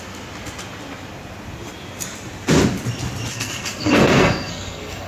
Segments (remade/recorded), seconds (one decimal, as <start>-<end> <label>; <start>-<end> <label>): 0.0-3.3 recorded; 3.3-5.1 remade